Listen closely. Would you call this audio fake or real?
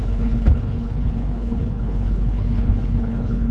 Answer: fake